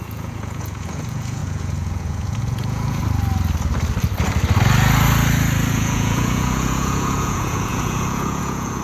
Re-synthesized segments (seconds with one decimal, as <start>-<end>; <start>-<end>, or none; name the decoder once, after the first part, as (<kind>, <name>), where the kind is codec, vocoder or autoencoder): 0.0-3.0 (vocoder, Vocos); 5.7-8.8